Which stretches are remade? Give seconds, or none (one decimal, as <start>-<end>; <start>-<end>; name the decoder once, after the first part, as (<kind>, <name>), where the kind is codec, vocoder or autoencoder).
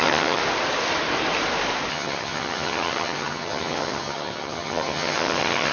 0.0-0.4 (vocoder, HiFi-GAN); 1.9-5.7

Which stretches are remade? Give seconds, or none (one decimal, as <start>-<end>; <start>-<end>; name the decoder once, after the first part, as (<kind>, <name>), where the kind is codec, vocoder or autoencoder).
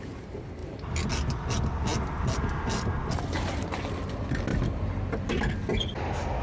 none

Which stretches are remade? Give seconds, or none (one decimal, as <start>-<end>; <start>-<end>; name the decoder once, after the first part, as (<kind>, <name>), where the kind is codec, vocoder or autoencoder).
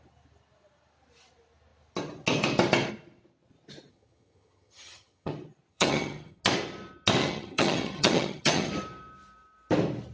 3.9-5.3 (vocoder, HiFi-GAN); 5.7-6.4; 7.2-8.7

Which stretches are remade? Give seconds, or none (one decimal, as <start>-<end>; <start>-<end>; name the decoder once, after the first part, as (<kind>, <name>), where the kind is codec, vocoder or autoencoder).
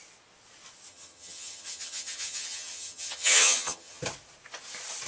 0.9-4.0 (vocoder, HiFi-GAN)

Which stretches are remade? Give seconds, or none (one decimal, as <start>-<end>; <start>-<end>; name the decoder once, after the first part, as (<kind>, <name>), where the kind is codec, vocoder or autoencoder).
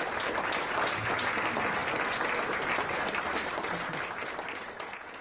none